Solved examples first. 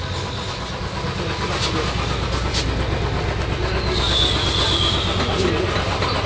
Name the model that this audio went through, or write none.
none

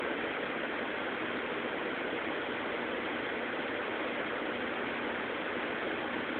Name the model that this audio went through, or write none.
none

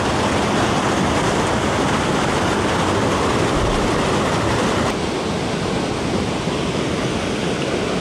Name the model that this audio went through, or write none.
none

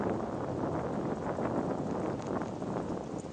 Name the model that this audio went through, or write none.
none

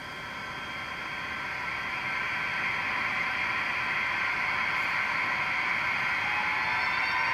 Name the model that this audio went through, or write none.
none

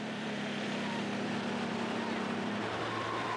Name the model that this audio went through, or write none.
vocoder, BigVGAN v2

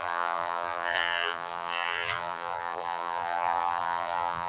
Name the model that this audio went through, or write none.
vocoder, BigVGAN v2